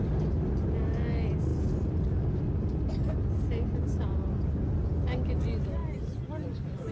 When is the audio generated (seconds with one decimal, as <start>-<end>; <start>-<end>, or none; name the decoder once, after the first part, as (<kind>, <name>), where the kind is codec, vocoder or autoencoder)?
1.5-2.4 (vocoder, BigVGAN v2); 5.8-6.9